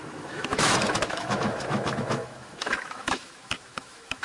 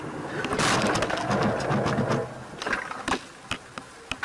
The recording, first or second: second